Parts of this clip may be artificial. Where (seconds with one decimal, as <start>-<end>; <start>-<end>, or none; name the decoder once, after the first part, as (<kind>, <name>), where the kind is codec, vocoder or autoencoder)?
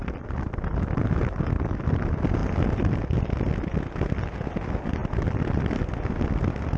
0.0-1.3 (vocoder, BigVGAN v2); 2.4-3.2; 5.0-5.9